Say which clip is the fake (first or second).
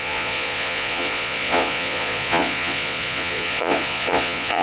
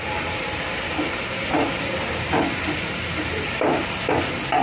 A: first